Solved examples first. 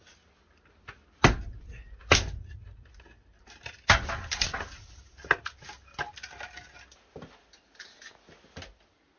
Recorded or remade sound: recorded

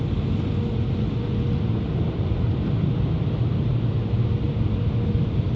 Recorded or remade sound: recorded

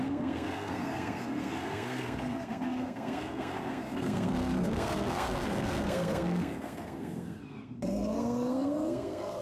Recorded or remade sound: remade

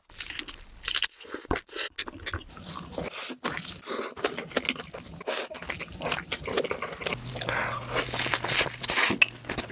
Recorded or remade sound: recorded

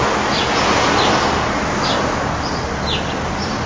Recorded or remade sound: recorded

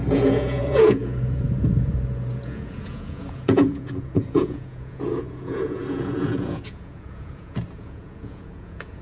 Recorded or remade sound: remade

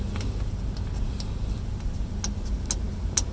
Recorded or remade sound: recorded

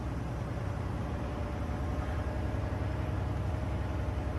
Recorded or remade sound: recorded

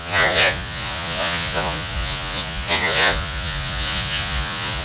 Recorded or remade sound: remade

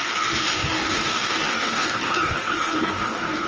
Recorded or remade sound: remade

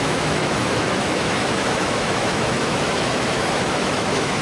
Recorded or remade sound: remade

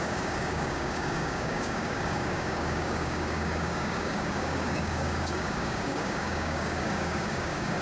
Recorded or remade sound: remade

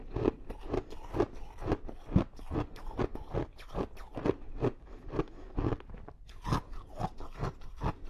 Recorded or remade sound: recorded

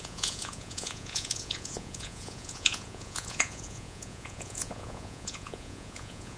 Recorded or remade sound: remade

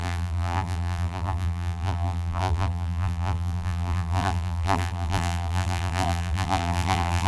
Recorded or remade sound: remade